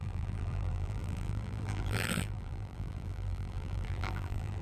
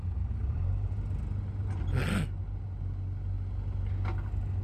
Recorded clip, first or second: second